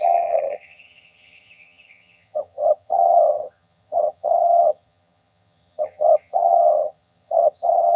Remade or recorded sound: remade